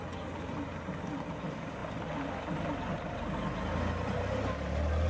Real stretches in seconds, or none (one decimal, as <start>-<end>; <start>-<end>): 0.0-5.1